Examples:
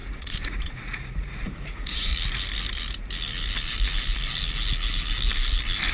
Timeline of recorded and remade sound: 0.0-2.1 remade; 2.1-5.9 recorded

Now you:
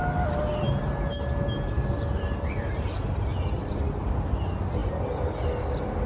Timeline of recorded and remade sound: 0.0-6.1 recorded

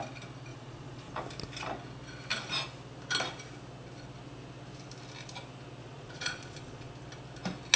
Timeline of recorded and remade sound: 0.0-0.5 recorded; 0.5-1.1 remade; 1.1-5.8 recorded; 5.8-6.9 remade; 6.9-7.8 recorded

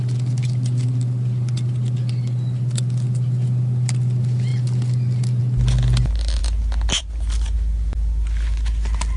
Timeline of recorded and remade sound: 0.0-9.2 recorded